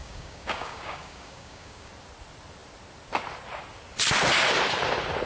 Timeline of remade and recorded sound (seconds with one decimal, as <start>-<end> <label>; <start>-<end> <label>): 0.0-1.9 remade; 1.9-5.3 recorded